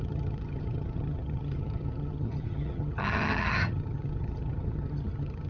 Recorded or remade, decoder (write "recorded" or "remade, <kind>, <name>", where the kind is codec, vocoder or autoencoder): remade, vocoder, HiFi-GAN